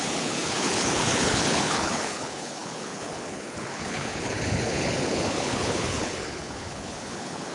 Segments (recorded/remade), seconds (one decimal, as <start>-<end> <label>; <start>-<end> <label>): 0.0-7.5 remade